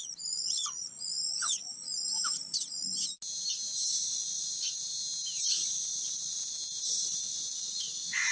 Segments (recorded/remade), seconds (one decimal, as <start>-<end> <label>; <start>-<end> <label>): 0.0-3.1 remade; 3.1-5.9 recorded; 5.9-6.4 remade; 6.4-6.9 recorded; 6.9-8.3 remade